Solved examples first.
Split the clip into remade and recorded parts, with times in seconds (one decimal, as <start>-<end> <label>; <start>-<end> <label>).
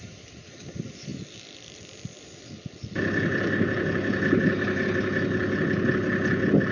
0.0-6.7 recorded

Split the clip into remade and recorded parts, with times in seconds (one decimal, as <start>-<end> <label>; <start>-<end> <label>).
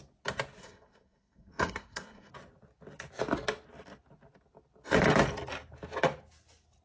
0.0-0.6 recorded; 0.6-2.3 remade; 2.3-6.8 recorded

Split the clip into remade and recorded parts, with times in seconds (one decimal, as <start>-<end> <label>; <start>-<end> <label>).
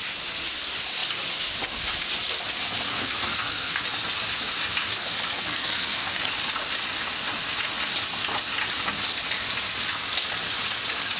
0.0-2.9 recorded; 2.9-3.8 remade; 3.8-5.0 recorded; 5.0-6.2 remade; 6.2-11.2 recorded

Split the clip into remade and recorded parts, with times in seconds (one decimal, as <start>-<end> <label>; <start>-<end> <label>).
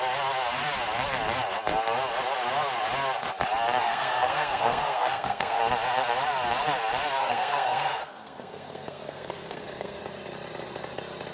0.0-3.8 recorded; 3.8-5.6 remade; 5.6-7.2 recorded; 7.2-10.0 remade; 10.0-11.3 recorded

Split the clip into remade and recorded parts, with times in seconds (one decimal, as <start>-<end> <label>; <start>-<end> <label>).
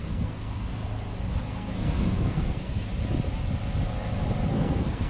0.0-0.8 remade; 0.8-1.4 recorded; 1.4-2.9 remade; 2.9-4.5 recorded; 4.5-5.1 remade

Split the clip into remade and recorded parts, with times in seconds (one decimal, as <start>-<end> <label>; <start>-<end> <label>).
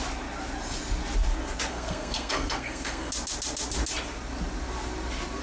0.0-1.7 recorded; 1.7-3.1 remade; 3.1-5.4 recorded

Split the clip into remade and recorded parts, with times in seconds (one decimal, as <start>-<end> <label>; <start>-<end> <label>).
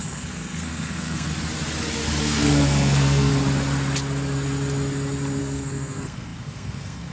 0.0-1.3 remade; 1.3-2.2 recorded; 2.2-3.3 remade; 3.3-5.4 recorded; 5.4-7.1 remade